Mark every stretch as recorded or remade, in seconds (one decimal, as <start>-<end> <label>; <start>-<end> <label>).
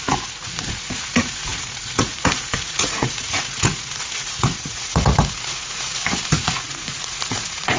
0.0-7.8 remade